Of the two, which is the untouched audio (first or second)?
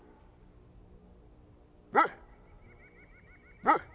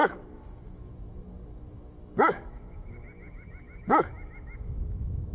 first